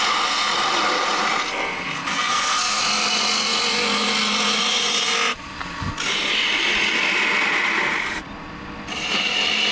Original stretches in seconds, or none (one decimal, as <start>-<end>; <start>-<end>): 0.0-2.1; 2.8-9.7